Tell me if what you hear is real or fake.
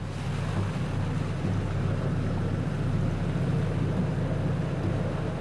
real